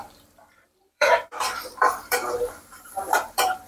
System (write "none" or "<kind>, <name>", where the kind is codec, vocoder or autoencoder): vocoder, BigVGAN v2